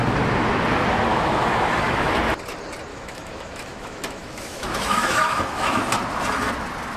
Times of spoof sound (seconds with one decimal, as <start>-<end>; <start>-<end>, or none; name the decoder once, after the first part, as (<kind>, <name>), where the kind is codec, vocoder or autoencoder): 1.1-2.1 (autoencoder, DAC-VAE); 2.9-5.8